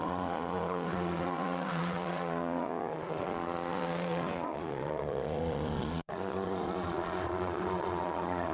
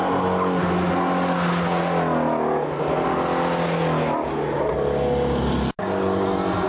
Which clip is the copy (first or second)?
first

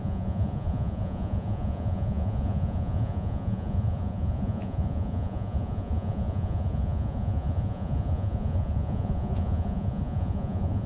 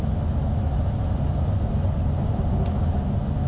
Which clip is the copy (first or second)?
first